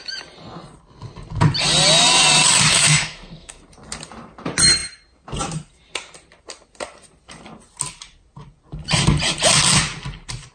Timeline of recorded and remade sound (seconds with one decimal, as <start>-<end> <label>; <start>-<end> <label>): 0.0-2.7 recorded; 2.7-3.6 remade; 3.6-10.5 recorded